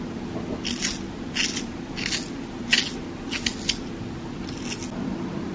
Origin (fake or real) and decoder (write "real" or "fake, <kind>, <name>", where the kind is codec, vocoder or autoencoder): real